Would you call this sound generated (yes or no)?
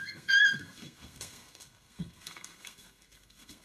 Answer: yes